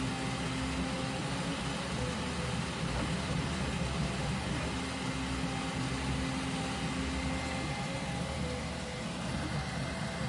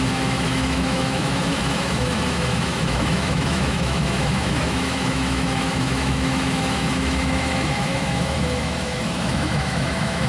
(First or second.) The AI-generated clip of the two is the second